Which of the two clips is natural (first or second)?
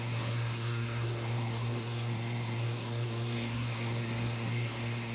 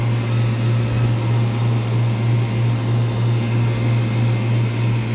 second